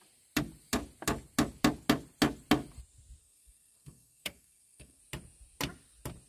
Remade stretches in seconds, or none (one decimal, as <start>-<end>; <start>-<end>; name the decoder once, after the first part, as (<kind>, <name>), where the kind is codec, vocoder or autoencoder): 3.2-5.0 (codec, SNAC)